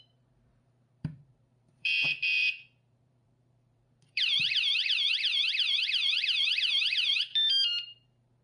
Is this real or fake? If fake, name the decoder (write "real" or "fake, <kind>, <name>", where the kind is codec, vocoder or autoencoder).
fake, vocoder, BigVGAN v2